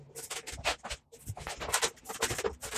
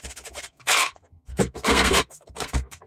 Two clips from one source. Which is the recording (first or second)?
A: first